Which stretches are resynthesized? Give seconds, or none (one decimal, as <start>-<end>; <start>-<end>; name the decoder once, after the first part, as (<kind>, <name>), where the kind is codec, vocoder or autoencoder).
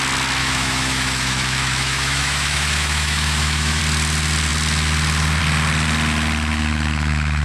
0.4-3.8 (autoencoder, DAC-VAE); 6.5-7.4